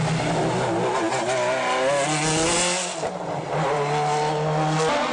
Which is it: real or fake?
real